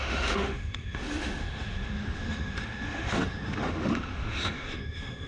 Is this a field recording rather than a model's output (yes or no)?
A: no